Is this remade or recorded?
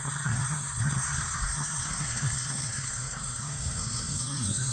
remade